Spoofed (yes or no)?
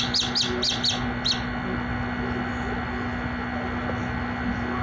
no